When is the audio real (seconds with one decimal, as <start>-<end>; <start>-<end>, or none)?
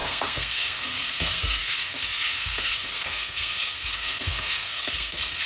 none